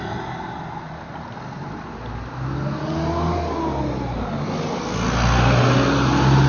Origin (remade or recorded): recorded